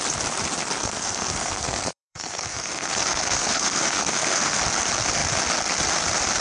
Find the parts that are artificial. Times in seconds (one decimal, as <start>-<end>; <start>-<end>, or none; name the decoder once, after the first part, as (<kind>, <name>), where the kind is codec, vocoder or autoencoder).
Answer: 0.8-4.6 (codec, SNAC)